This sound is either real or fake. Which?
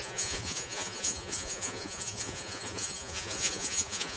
fake